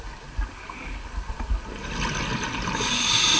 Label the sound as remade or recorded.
recorded